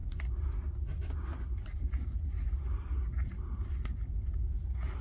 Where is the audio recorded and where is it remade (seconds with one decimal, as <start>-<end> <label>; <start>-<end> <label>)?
0.0-5.0 recorded